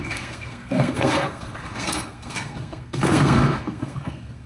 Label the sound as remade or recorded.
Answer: remade